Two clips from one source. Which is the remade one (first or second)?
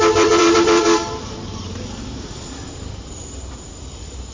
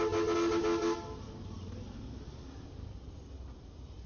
first